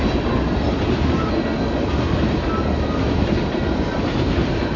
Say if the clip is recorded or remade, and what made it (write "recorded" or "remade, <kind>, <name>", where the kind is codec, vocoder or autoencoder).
recorded